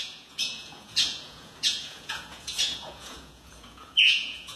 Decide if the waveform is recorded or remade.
remade